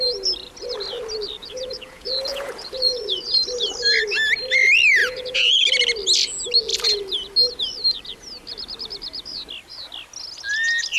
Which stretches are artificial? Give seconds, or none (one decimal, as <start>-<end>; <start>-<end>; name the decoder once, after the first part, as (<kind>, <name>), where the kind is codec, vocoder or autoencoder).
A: 1.4-3.4 (vocoder, Vocos); 5.0-5.6